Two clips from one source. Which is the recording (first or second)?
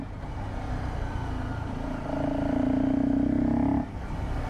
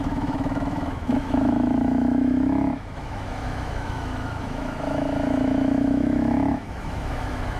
first